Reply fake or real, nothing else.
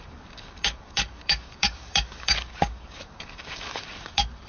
fake